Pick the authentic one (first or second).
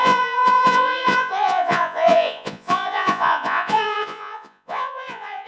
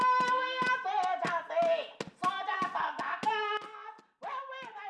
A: second